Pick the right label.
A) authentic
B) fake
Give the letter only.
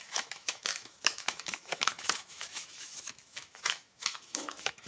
B